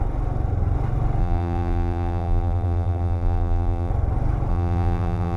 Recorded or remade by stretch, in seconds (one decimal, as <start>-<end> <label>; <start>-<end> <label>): 0.0-1.2 recorded; 1.2-3.9 remade; 3.9-4.5 recorded; 4.5-5.4 remade